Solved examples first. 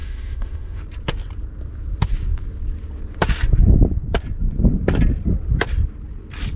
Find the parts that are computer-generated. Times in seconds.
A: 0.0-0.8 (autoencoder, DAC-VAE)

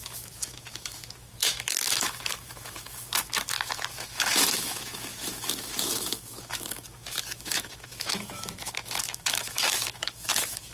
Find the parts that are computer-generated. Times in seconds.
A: 0.0-10.7 (autoencoder, DAC-VAE)

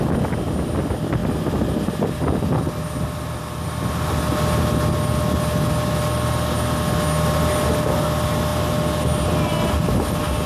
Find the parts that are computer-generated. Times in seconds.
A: none